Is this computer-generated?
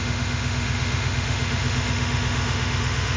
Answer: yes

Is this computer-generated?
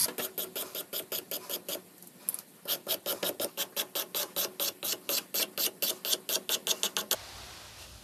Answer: no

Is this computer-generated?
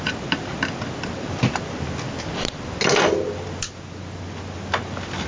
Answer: no